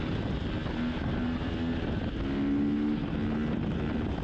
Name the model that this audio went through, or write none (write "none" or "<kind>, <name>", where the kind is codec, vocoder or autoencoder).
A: none